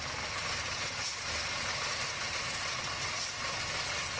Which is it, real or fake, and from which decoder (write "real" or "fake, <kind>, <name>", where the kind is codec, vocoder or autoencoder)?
real